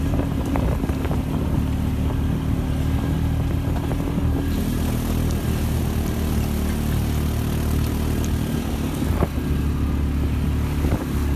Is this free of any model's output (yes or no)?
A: yes